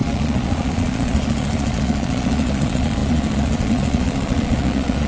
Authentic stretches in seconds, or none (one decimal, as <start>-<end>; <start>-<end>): none